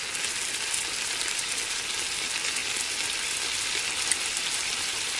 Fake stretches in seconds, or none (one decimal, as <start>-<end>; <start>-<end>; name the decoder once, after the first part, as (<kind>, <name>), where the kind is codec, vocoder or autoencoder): none